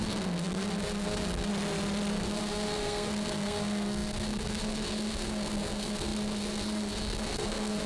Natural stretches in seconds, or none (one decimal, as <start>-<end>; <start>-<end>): 1.5-2.1